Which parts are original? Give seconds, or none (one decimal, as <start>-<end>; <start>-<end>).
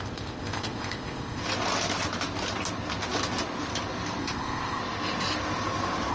1.4-4.2; 4.8-6.1